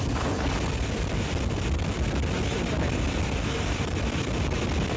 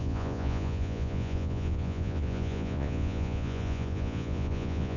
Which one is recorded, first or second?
first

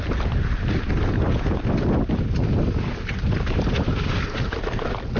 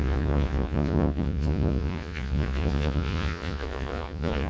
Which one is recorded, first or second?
first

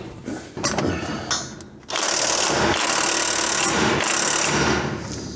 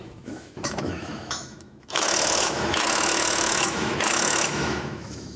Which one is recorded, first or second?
first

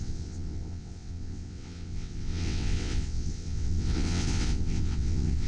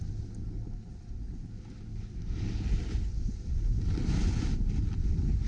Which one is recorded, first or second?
second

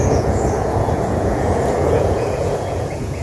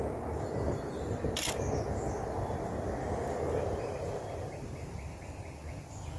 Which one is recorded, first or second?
second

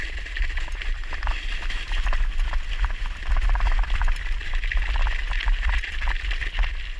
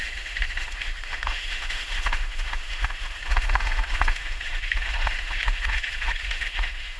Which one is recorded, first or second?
first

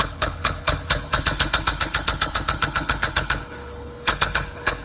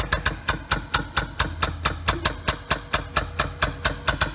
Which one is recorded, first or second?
second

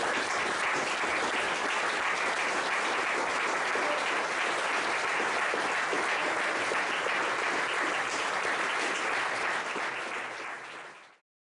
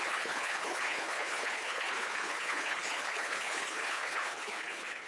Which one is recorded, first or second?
first